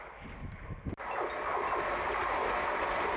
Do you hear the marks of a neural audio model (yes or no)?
no